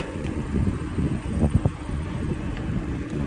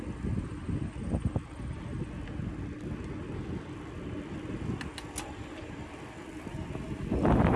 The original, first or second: second